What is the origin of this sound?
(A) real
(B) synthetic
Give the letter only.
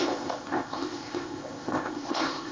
B